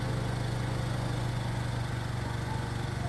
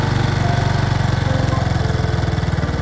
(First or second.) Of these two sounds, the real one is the second